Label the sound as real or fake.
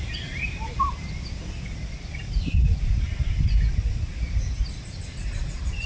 real